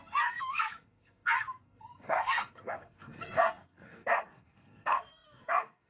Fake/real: fake